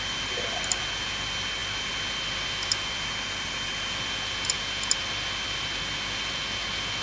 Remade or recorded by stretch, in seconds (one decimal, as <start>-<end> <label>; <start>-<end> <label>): 0.0-7.0 recorded